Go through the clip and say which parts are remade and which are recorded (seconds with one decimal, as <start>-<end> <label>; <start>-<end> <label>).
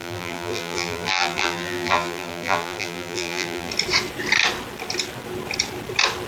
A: 0.0-3.7 remade; 3.7-6.3 recorded